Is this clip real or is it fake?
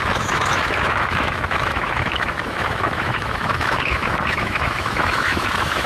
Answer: fake